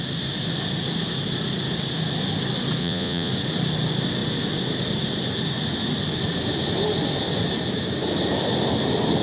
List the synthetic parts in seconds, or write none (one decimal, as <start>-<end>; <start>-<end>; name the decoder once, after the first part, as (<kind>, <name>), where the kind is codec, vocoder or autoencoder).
2.8-3.3 (vocoder, Vocos)